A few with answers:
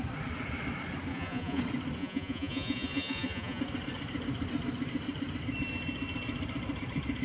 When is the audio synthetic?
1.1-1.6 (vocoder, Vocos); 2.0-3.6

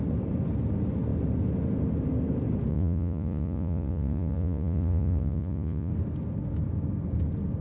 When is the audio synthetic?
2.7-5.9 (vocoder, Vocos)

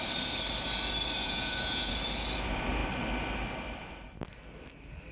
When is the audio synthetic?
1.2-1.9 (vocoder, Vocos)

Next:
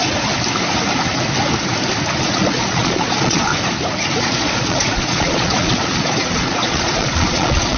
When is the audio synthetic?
2.2-3.5 (vocoder, Vocos); 4.2-7.8

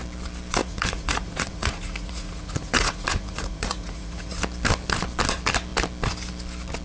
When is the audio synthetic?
0.6-4.4 (vocoder, Vocos)